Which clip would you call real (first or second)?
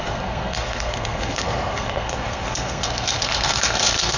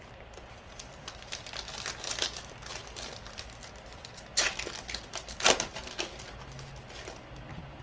second